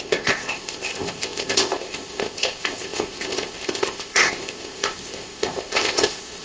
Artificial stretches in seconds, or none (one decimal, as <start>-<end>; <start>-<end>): 0.0-6.4